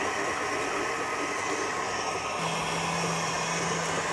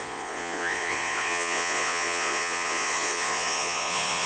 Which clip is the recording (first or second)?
first